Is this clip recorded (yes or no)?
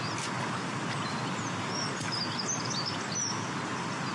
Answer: yes